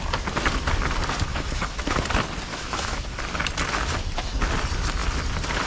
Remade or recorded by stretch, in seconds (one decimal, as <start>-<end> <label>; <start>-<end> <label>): 0.0-1.3 recorded; 1.3-2.0 remade; 2.0-2.5 recorded; 2.5-3.2 remade; 3.2-5.7 recorded

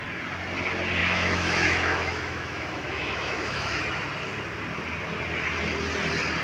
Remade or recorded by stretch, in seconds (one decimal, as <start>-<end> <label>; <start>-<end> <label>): 0.0-1.0 recorded; 1.0-3.8 remade; 3.8-6.4 recorded